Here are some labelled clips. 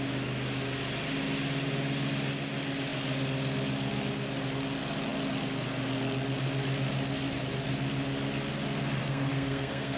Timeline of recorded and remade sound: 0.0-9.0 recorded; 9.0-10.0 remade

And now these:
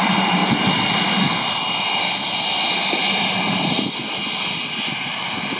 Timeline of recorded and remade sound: 0.0-5.6 recorded

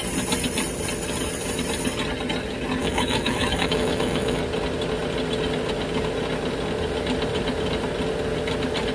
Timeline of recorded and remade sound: 0.0-2.8 recorded; 2.8-4.4 remade; 4.4-8.9 recorded